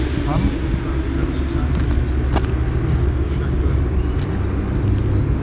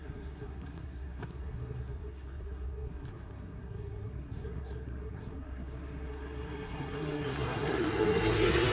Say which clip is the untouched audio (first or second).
first